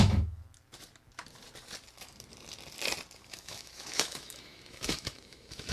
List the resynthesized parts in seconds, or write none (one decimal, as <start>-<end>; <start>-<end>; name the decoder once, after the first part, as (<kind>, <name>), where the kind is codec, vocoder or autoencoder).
0.0-0.4 (autoencoder, DAC-VAE); 3.2-5.7